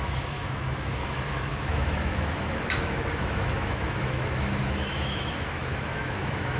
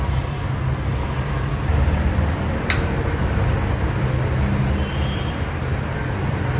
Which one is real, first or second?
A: second